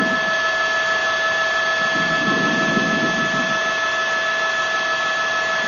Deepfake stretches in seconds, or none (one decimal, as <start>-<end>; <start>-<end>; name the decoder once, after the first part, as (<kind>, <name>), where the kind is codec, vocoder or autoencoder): 1.0-1.6 (vocoder, BigVGAN v2)